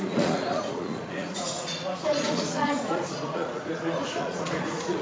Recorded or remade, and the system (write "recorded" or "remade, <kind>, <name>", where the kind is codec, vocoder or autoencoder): remade, vocoder, Vocos